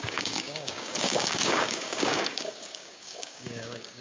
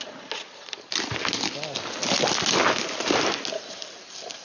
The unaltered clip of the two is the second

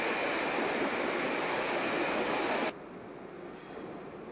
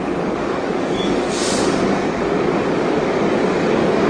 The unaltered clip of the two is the first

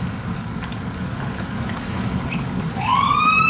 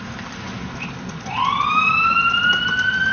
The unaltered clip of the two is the second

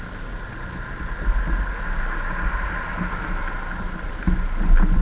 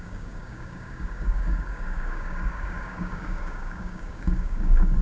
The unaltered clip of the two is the first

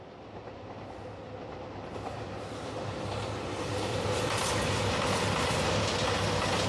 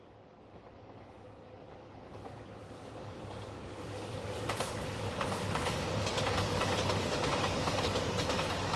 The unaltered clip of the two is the first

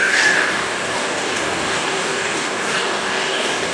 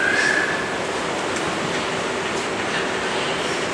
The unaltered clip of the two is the second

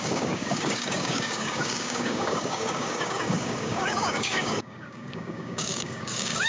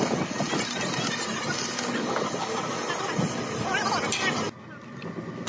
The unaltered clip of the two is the second